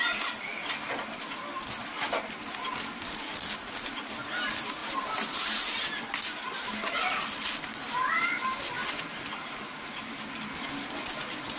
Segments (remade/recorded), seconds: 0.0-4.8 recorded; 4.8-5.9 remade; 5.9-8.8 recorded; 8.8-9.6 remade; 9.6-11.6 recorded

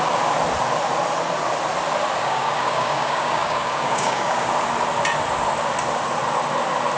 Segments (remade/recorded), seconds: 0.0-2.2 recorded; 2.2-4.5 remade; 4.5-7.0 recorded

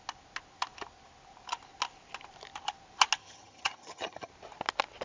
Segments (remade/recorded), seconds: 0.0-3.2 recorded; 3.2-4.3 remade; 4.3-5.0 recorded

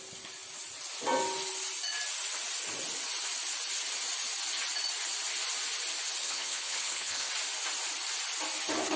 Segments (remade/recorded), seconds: 0.0-6.2 recorded; 6.2-7.3 remade; 7.3-9.0 recorded

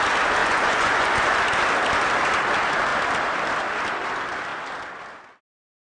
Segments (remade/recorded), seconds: 0.0-0.4 recorded; 0.4-1.4 remade; 1.4-5.9 recorded